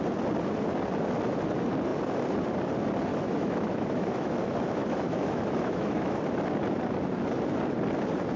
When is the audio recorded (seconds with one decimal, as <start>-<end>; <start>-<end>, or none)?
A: 0.0-3.1; 6.2-8.4